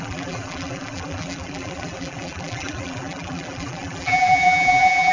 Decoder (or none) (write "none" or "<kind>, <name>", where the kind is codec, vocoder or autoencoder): vocoder, BigVGAN v2